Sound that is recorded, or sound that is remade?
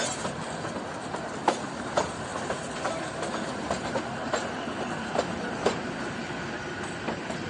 recorded